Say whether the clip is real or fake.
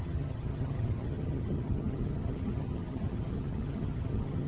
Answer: fake